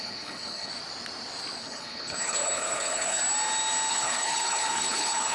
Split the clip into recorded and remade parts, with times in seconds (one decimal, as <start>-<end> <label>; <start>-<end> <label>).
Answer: 0.0-0.7 remade; 0.7-1.6 recorded; 1.6-3.2 remade; 3.2-3.9 recorded; 3.9-5.3 remade